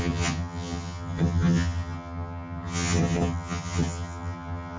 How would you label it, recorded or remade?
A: remade